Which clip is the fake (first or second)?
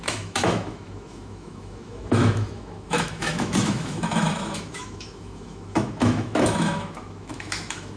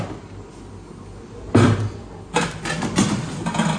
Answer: first